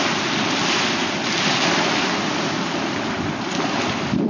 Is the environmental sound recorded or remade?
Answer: recorded